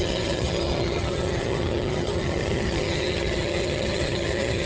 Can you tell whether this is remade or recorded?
remade